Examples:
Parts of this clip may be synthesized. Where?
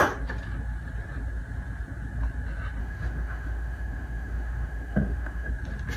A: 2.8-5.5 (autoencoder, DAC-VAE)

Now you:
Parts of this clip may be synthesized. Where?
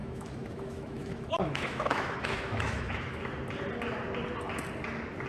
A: 0.0-3.2 (autoencoder, DAC-VAE)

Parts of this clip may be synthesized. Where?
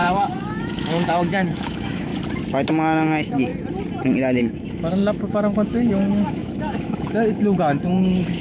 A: 0.0-2.1 (autoencoder, DAC-VAE); 2.7-3.5; 4.4-8.4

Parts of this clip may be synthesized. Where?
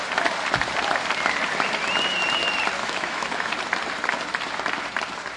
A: 2.8-3.5 (autoencoder, DAC-VAE)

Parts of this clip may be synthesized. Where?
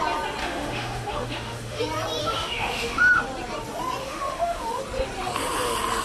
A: 0.4-1.8 (autoencoder, DAC-VAE); 2.2-3.2; 4.0-4.8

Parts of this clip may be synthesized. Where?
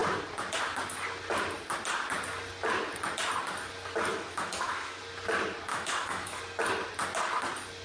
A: 4.1-5.0 (autoencoder, DAC-VAE); 5.7-6.4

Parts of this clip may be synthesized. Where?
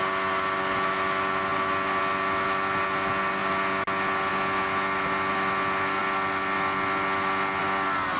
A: none